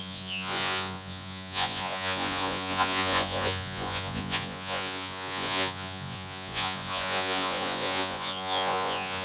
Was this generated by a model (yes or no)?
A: yes